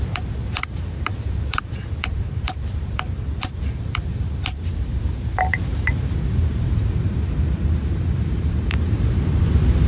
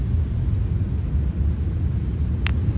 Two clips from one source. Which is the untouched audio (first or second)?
second